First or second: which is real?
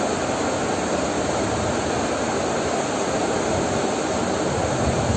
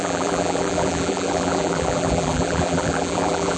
first